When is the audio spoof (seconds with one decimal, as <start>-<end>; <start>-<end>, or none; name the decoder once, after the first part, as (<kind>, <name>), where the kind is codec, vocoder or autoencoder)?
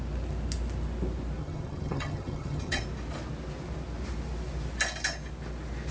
1.4-2.8 (vocoder, HiFi-GAN)